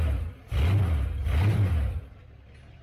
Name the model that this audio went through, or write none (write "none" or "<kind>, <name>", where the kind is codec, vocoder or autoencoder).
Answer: none